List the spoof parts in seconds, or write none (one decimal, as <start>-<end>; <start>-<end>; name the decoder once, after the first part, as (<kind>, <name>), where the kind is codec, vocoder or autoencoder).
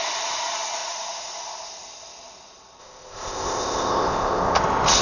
2.8-4.6 (codec, ZipCodec)